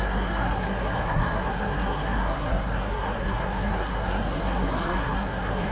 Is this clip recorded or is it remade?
remade